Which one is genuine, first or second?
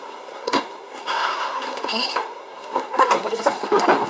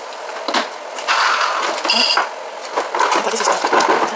second